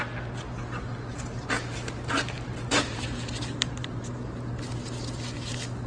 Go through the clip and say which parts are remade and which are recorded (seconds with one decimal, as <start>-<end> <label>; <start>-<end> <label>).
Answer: 0.0-1.1 recorded; 1.1-4.6 remade; 4.6-5.9 recorded